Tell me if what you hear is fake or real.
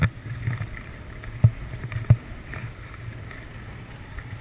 real